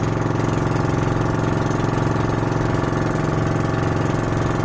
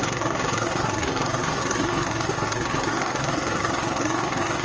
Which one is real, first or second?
first